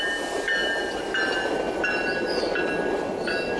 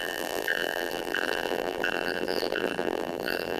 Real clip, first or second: first